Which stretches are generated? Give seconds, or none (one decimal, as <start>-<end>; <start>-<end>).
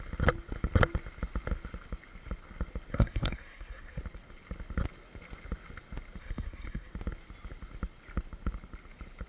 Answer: 2.9-4.0; 6.2-6.9